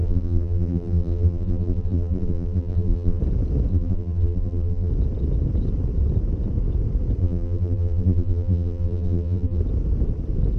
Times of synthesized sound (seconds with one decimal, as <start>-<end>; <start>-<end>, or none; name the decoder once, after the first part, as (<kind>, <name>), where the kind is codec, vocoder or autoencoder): 0.0-3.2 (vocoder, BigVGAN v2); 3.7-4.9; 7.2-9.6